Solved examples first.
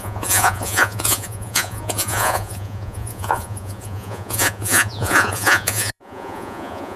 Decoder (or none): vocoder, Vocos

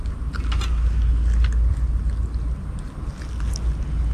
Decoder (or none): none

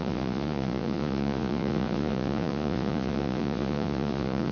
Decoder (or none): vocoder, Vocos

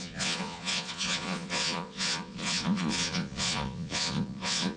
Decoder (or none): vocoder, Vocos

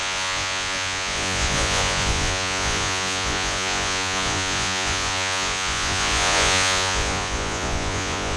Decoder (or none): vocoder, Vocos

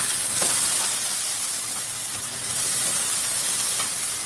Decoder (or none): none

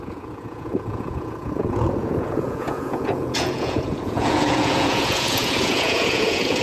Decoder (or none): vocoder, Vocos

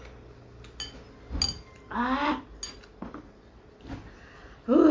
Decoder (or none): none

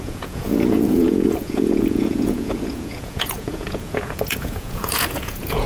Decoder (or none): vocoder, Vocos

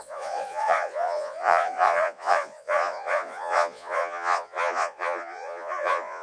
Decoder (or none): vocoder, Vocos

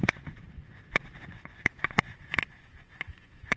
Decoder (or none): vocoder, Vocos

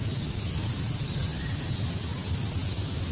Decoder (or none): none